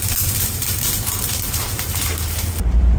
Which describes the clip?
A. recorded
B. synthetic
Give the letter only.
B